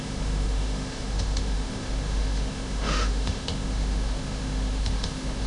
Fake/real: fake